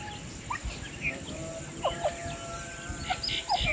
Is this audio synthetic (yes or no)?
no